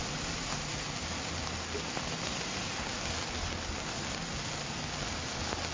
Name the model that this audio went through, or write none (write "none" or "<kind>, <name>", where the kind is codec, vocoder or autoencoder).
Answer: none